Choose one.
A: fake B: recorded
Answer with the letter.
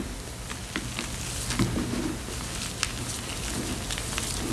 B